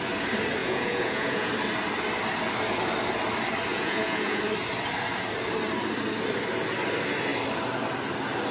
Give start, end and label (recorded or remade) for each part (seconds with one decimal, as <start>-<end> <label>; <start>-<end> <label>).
0.0-0.6 recorded; 0.6-1.5 remade; 1.5-3.7 recorded; 3.7-4.4 remade; 4.4-8.5 recorded

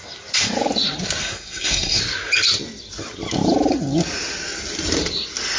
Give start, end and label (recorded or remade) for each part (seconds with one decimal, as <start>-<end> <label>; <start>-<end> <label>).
0.0-1.2 recorded; 1.2-2.0 remade; 2.0-5.6 recorded

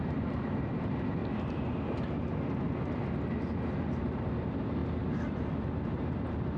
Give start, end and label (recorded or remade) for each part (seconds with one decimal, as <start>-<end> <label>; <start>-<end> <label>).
0.0-1.2 remade; 1.2-4.0 recorded; 4.0-4.8 remade; 4.8-5.4 recorded; 5.4-6.6 remade

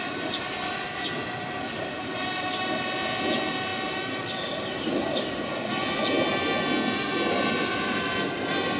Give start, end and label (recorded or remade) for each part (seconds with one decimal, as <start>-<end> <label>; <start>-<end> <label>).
0.0-8.8 recorded

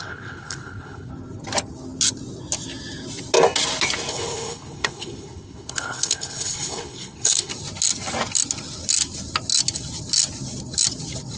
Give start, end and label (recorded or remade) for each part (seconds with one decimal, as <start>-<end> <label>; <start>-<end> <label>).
0.0-1.1 remade; 1.1-4.1 recorded; 4.1-7.5 remade; 7.5-11.4 recorded

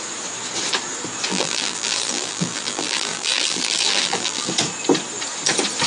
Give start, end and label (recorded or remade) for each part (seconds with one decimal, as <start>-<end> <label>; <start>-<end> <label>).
0.0-1.3 recorded; 1.3-4.5 remade; 4.5-5.9 recorded